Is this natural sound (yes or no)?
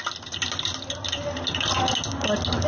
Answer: yes